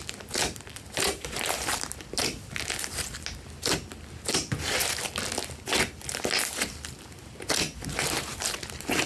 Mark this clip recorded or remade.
recorded